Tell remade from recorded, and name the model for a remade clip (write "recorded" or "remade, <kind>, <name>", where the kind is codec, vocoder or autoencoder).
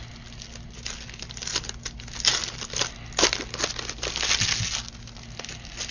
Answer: recorded